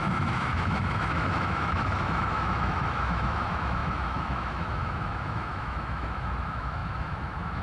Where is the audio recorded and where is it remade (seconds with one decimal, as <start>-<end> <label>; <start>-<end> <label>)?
0.0-7.6 remade